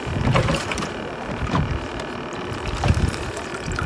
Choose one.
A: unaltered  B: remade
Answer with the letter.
B